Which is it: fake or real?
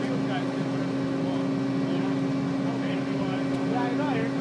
real